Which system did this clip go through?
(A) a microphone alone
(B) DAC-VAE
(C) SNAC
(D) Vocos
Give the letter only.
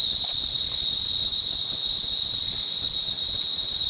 A